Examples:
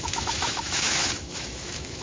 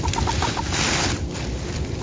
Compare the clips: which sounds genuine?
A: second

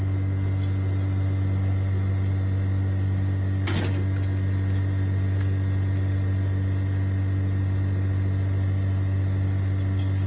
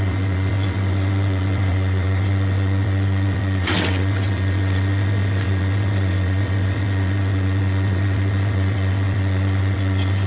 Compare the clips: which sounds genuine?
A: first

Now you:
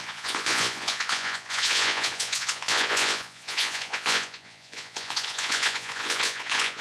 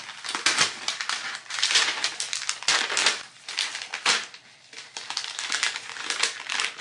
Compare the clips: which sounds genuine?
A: second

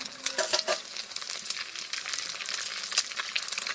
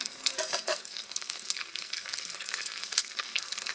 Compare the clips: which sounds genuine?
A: first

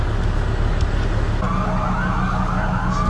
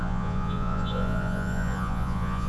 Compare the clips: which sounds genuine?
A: first